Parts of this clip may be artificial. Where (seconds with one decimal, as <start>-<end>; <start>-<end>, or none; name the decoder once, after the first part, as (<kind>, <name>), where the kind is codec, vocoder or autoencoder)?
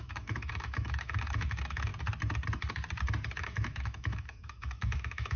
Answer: 0.0-1.9 (autoencoder, DAC-VAE); 3.4-5.4